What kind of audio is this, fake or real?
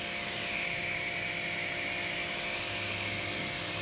real